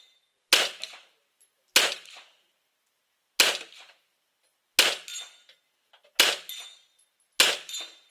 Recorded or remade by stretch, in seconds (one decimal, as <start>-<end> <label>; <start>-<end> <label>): 0.0-8.1 recorded